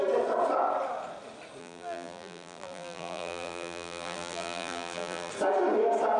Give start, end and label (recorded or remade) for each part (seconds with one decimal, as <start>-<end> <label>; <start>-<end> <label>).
0.0-1.6 recorded; 1.6-5.3 remade; 5.3-6.2 recorded